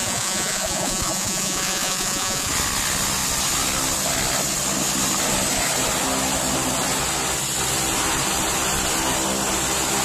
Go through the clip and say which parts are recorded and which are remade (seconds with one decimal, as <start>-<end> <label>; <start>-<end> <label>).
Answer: 0.0-2.5 remade; 2.5-10.0 recorded